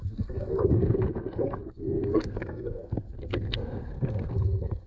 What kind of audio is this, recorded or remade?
remade